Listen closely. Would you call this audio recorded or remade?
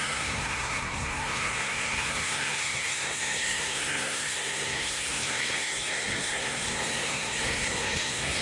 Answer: remade